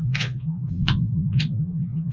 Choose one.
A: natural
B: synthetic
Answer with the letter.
B